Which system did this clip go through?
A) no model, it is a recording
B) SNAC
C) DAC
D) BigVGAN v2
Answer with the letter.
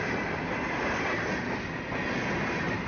A